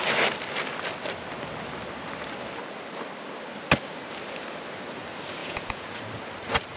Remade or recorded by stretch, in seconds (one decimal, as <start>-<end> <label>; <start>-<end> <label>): 0.0-5.4 recorded; 5.4-6.0 remade; 6.0-6.8 recorded